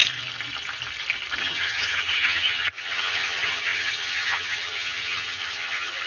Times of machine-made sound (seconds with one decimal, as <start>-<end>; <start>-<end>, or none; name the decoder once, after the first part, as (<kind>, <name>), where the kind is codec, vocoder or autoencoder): 1.4-6.1 (vocoder, HiFi-GAN)